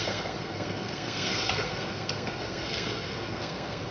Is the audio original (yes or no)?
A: no